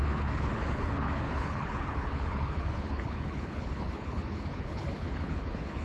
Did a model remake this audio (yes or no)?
yes